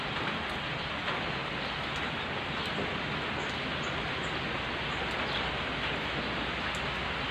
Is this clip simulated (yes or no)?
no